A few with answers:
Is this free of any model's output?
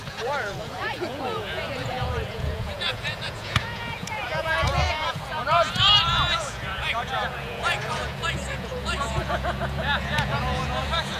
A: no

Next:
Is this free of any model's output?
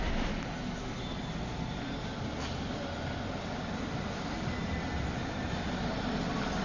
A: yes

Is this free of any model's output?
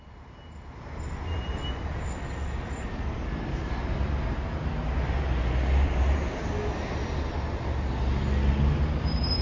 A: yes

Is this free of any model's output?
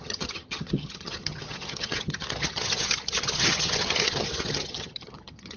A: no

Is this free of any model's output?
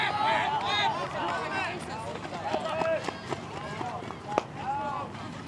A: yes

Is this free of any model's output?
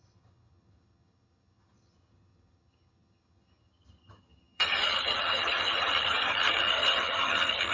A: no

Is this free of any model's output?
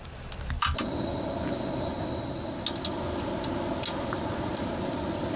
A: yes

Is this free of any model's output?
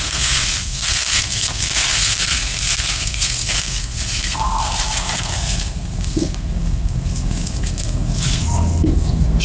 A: no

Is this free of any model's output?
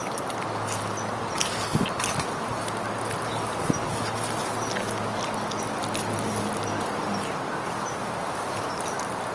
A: yes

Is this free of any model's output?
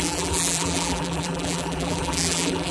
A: no